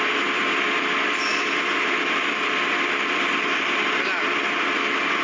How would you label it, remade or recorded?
recorded